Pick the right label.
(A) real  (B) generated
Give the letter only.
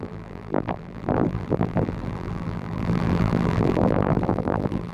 B